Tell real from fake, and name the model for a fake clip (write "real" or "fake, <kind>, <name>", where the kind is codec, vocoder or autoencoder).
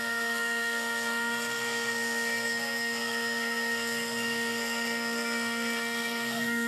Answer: fake, codec, SNAC